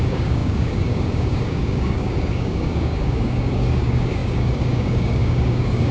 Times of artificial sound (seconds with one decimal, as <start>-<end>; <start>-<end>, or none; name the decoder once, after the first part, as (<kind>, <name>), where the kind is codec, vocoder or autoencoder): 0.0-5.9 (codec, DAC)